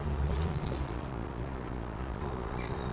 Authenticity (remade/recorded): remade